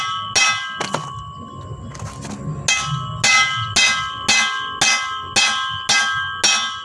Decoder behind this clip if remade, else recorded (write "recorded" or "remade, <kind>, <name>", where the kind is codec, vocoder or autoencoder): recorded